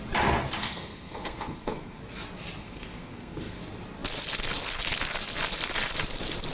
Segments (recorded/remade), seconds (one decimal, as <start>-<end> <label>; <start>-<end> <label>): 0.0-0.6 recorded; 0.6-2.0 remade; 2.0-2.6 recorded; 2.6-3.6 remade; 3.6-6.5 recorded